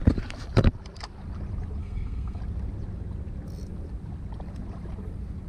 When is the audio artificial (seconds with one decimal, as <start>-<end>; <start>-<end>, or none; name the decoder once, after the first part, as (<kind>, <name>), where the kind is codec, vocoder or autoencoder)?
1.8-2.4 (codec, SNAC)

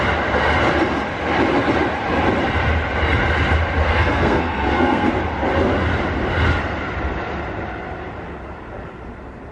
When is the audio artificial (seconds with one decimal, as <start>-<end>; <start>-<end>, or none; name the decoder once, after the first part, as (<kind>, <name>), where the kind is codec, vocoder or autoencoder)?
3.8-5.1 (codec, SNAC)

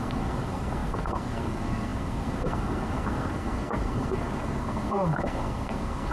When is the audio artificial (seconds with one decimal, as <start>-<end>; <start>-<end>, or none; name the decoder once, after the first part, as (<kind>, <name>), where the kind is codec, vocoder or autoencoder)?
0.0-6.1 (codec, SNAC)

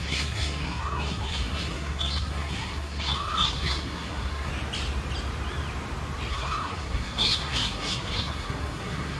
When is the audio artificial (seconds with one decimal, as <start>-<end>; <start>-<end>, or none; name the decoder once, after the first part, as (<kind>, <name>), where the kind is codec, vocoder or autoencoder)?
0.0-4.5 (codec, SNAC); 6.3-9.2

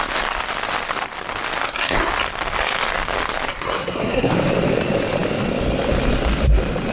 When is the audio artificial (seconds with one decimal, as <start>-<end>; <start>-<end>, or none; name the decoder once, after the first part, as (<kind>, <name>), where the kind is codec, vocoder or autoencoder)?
1.6-2.1 (codec, SNAC); 3.5-4.3

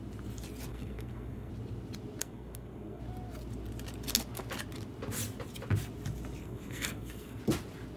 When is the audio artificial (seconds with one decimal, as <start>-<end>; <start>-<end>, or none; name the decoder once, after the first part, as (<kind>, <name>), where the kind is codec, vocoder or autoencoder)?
0.7-1.5 (codec, SNAC); 2.2-3.0; 6.4-7.4

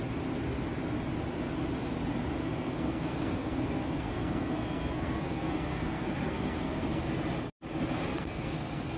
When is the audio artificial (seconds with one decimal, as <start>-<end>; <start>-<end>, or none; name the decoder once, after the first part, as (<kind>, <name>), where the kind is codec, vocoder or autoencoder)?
2.4-7.1 (codec, SNAC); 8.1-9.0

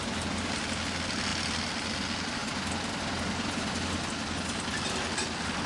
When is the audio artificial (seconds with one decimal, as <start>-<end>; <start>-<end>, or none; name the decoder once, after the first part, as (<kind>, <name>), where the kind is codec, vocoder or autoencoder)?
none